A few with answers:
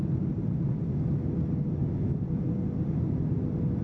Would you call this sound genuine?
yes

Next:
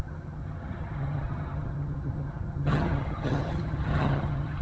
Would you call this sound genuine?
no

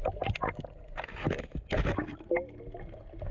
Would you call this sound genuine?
yes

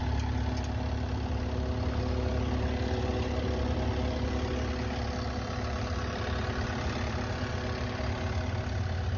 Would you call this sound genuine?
yes